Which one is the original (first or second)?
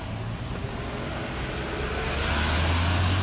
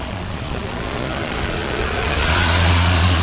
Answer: first